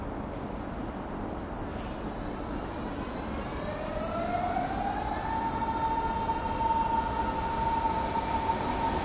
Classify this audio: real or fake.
real